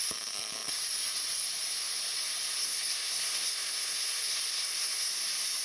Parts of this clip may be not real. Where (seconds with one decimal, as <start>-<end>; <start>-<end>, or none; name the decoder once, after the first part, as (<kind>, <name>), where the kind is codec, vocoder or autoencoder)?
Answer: 2.6-5.1 (codec, SNAC)

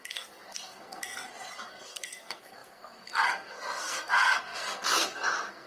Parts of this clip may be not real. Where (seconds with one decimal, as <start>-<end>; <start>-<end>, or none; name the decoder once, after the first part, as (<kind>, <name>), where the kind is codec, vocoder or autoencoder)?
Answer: 0.0-1.2 (codec, SNAC); 1.7-5.7

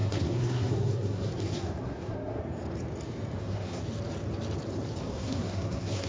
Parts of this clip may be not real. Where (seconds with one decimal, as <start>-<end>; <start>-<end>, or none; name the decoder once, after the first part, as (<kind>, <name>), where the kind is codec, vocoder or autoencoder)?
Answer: 0.0-2.4 (codec, SNAC); 3.4-3.8; 5.0-6.1

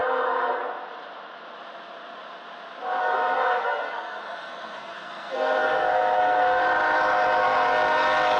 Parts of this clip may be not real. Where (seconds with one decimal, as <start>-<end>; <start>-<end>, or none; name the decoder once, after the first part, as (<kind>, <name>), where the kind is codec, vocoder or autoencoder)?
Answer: 0.0-0.6 (codec, SNAC); 3.0-6.6

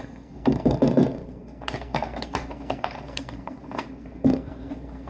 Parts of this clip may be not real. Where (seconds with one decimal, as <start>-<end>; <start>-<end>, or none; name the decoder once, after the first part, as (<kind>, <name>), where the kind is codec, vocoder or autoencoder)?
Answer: 0.0-5.1 (codec, SNAC)

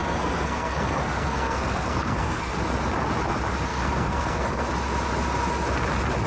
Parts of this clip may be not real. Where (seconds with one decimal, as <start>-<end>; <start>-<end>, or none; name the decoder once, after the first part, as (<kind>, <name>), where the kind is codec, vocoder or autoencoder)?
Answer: 0.0-2.5 (codec, SNAC); 3.7-4.7

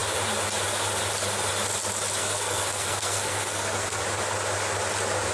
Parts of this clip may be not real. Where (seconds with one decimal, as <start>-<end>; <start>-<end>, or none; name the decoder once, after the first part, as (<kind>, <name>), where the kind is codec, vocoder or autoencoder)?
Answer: 2.2-4.0 (codec, SNAC)